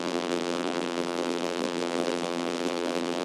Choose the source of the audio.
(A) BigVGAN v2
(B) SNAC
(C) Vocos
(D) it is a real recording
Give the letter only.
A